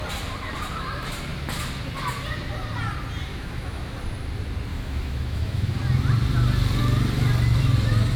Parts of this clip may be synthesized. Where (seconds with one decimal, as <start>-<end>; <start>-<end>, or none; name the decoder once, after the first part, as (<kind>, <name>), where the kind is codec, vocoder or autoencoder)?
3.3-4.0 (autoencoder, DAC-VAE); 4.7-5.7